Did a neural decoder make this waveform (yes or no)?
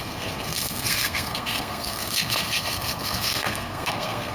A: yes